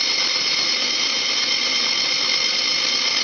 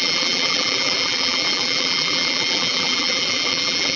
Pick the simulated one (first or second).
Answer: second